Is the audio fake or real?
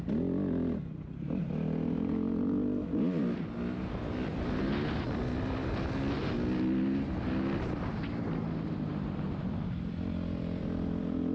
real